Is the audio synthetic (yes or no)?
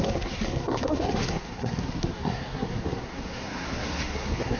yes